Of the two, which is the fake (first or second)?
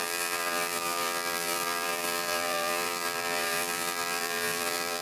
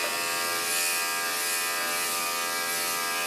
first